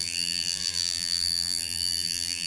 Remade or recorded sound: remade